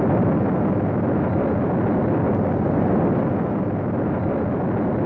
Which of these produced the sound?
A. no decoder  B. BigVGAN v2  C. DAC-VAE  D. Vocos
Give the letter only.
A